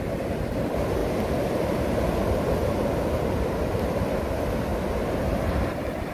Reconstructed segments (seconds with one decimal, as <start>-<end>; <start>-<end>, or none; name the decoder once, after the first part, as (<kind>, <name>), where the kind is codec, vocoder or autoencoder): none